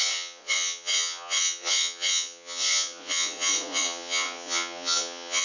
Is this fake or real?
fake